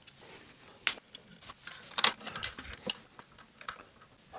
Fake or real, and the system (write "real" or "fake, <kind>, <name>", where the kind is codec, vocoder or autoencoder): real